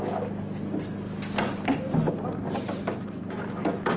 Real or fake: real